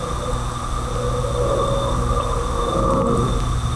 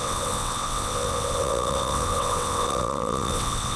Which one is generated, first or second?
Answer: second